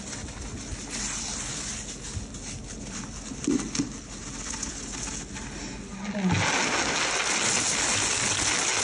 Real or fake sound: real